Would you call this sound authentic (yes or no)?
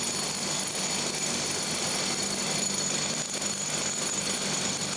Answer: yes